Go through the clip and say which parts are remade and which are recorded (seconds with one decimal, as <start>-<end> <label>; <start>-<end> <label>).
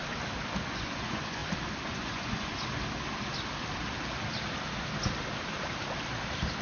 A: 0.0-0.6 recorded; 0.6-1.4 remade; 1.4-1.9 recorded; 1.9-2.5 remade; 2.5-6.6 recorded